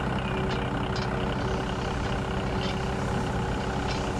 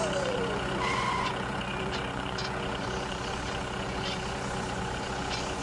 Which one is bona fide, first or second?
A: first